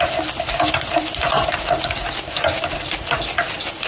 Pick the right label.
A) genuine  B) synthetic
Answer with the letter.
A